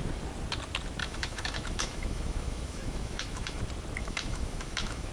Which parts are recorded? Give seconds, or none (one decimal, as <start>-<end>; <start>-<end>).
0.0-1.0; 3.6-4.0

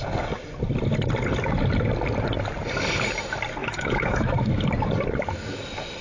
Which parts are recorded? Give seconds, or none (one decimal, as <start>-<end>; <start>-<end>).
0.0-3.6; 4.6-6.0

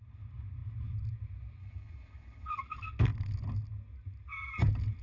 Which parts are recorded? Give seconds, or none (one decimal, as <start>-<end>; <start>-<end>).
0.0-1.6; 2.5-5.0

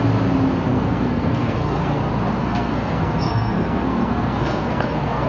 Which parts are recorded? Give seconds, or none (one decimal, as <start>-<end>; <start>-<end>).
0.0-0.7; 2.0-2.4

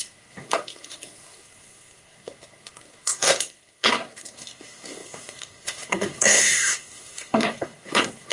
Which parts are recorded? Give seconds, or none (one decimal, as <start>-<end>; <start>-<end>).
none

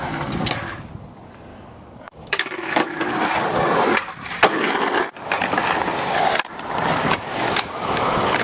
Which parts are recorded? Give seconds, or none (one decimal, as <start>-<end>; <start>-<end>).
0.0-1.5; 3.1-7.0

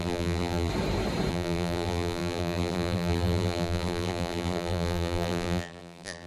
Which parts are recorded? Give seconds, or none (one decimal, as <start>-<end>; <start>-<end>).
0.7-1.3